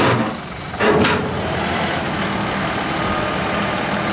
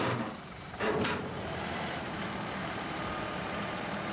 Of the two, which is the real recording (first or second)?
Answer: first